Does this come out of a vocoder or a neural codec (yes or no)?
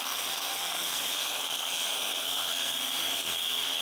yes